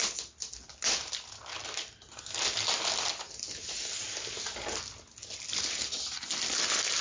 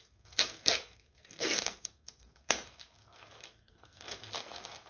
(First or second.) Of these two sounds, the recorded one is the first